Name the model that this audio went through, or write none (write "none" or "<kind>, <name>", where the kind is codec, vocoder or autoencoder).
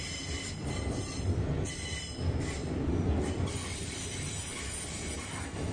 none